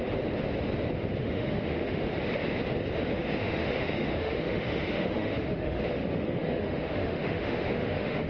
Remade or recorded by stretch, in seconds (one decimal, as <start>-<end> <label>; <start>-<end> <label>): 0.0-1.2 recorded; 1.2-2.1 remade; 2.1-3.1 recorded; 3.1-8.3 remade